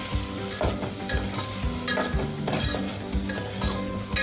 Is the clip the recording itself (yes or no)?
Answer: yes